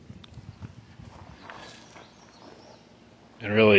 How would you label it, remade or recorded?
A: recorded